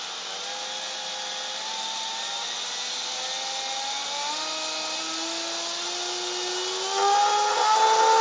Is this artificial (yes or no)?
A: no